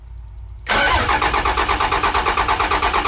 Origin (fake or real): real